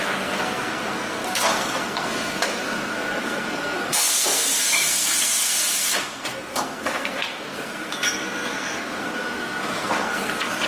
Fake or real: fake